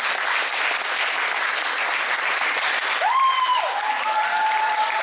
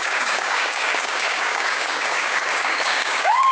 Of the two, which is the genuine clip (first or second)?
first